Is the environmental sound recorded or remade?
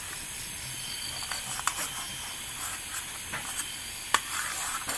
recorded